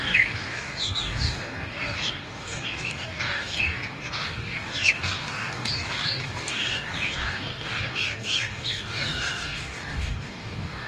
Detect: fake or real fake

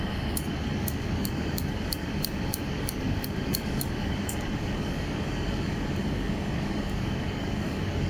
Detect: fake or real fake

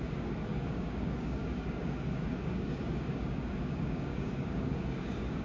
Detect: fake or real fake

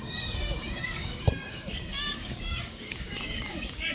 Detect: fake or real fake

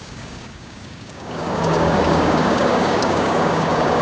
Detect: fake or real fake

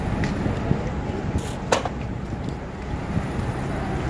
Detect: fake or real real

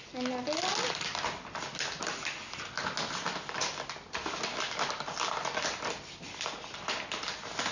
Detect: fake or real real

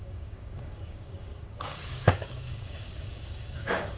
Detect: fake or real fake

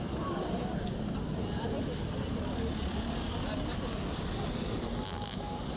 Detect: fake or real real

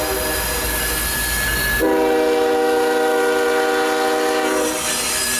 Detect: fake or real real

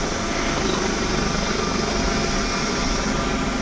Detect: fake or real real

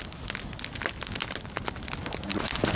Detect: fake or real real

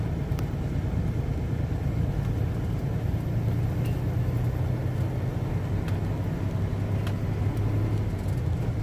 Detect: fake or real real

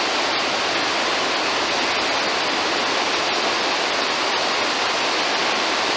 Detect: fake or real real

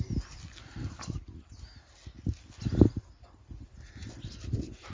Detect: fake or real real